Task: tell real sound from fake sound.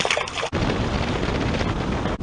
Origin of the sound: real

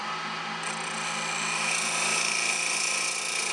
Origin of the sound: real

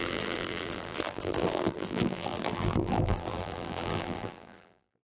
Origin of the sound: fake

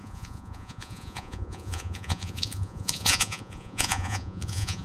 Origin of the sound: fake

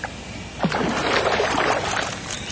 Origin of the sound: real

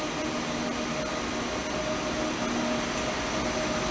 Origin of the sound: real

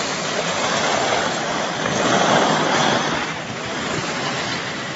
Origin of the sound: real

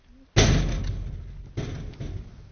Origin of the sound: real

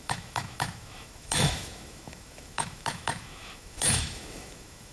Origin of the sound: fake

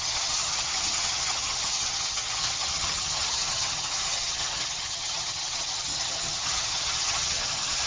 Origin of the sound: fake